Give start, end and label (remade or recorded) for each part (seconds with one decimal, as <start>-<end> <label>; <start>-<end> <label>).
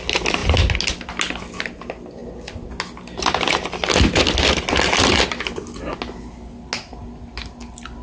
0.0-8.0 recorded